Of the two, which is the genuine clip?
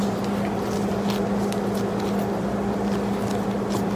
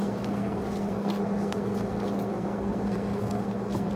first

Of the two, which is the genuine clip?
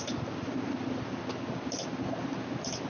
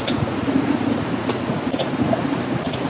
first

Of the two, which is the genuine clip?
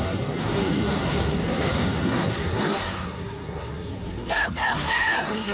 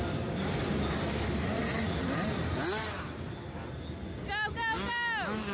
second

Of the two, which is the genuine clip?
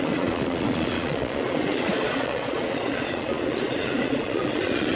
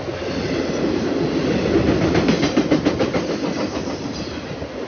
second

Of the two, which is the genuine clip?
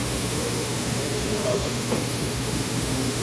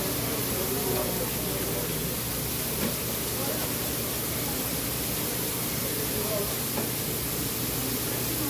second